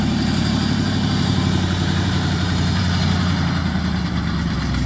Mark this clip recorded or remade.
remade